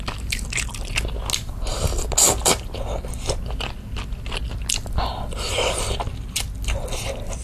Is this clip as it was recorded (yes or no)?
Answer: yes